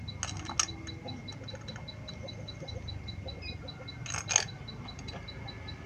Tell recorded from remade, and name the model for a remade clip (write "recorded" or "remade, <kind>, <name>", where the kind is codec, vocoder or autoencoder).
recorded